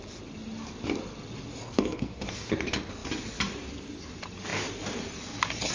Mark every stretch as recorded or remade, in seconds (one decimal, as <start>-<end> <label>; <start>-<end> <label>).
0.0-1.6 recorded; 1.6-2.2 remade; 2.2-5.7 recorded